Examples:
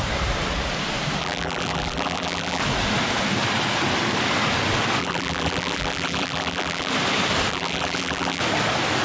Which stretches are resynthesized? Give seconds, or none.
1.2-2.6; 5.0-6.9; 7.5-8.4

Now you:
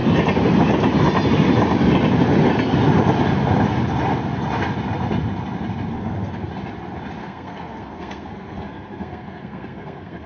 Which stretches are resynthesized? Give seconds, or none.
5.9-6.5; 7.2-10.3

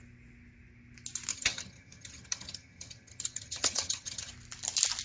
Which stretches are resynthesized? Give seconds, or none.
1.3-4.3

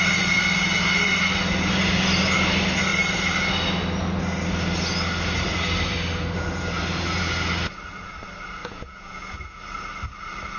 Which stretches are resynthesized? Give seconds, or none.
8.6-9.6

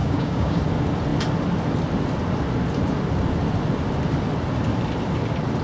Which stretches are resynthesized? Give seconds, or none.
0.0-0.6

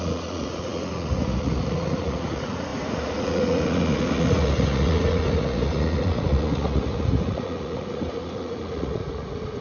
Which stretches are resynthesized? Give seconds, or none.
0.0-9.6

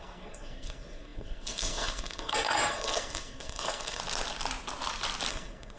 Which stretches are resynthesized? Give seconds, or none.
0.0-4.0; 5.3-5.8